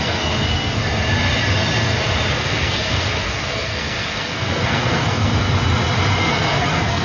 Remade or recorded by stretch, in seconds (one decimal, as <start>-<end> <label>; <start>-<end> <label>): 0.0-0.8 remade; 0.8-2.3 recorded; 2.3-5.3 remade; 5.3-6.2 recorded; 6.2-7.0 remade